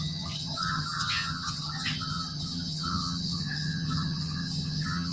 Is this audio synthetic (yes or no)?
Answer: yes